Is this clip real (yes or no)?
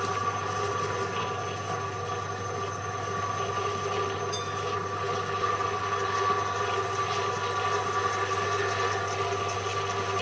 yes